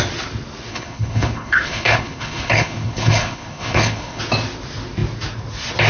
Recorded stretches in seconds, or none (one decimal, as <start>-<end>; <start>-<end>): 0.0-0.7; 4.2-5.9